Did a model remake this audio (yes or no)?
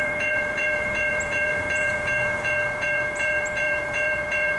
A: yes